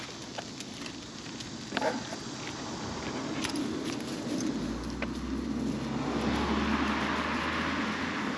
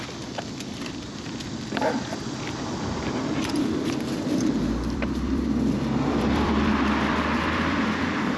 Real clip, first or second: first